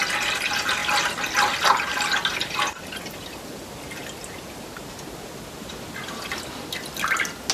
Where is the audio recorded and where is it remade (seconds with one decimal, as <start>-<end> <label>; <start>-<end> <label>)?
0.0-7.5 recorded